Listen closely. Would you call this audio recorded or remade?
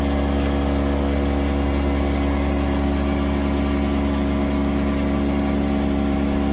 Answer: recorded